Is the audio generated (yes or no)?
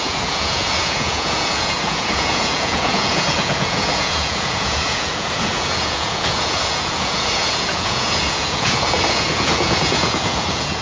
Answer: yes